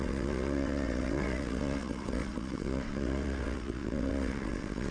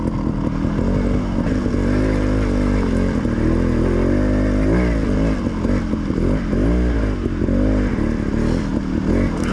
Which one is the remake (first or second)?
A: first